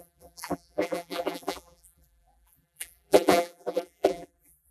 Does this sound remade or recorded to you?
remade